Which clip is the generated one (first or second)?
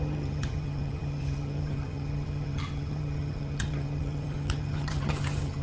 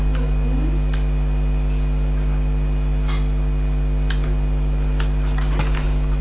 first